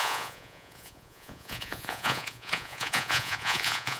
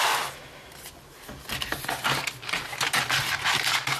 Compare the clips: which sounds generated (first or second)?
first